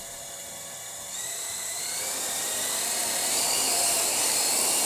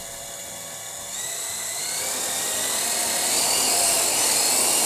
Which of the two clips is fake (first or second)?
first